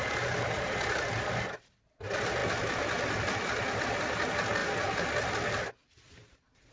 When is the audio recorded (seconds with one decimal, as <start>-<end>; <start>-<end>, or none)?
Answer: 0.0-6.7